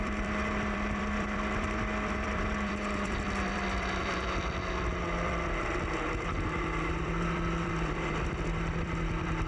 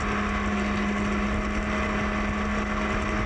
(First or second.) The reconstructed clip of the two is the first